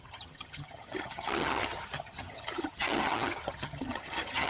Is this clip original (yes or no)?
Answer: no